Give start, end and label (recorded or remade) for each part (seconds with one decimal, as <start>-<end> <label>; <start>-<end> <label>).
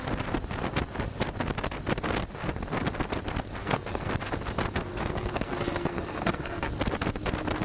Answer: 0.0-3.6 recorded; 3.6-4.1 remade; 4.1-4.9 recorded; 4.9-6.7 remade; 6.7-7.6 recorded